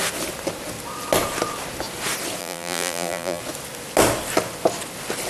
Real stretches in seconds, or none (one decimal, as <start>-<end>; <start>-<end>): 0.0-2.4; 3.4-5.3